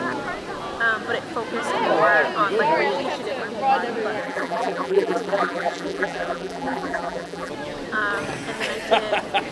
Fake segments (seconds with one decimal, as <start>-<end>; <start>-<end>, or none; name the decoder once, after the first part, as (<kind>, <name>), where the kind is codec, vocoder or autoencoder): 4.2-7.5 (vocoder, BigVGAN v2)